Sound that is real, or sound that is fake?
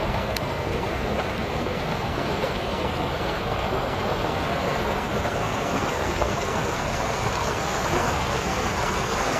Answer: fake